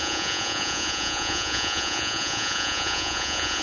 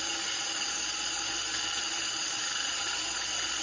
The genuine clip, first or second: second